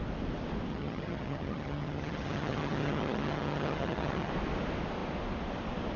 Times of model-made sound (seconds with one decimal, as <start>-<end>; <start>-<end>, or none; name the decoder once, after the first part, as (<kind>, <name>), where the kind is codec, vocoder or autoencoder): 0.7-4.3 (vocoder, HiFi-GAN)

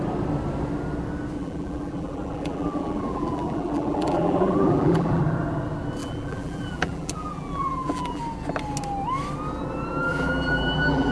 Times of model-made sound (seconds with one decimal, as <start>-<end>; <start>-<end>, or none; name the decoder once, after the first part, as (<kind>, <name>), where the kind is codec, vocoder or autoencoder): 1.4-5.2 (vocoder, BigVGAN v2); 6.0-8.2; 10.1-11.1

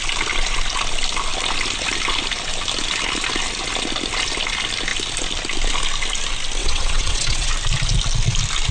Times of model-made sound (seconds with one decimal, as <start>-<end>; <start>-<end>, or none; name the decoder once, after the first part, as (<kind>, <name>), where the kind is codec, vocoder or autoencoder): 6.6-7.5 (vocoder, WaveNeXt)

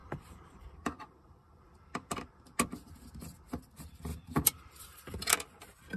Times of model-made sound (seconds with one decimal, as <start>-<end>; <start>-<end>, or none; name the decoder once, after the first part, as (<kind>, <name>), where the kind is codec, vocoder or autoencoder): 0.0-2.3 (vocoder, BigVGAN v2); 4.1-5.3

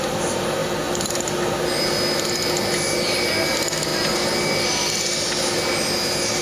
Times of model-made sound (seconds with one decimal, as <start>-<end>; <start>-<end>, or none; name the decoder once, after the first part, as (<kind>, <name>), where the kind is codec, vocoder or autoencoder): none

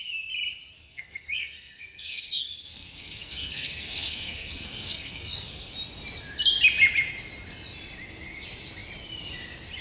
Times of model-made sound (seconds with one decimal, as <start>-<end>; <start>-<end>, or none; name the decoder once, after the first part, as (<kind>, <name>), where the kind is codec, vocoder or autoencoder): 0.7-5.7 (codec, SNAC)